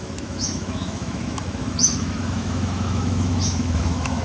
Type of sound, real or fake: fake